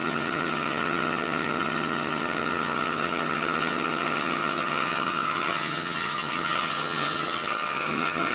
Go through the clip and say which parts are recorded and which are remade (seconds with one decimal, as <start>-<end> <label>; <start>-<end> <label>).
0.0-8.3 remade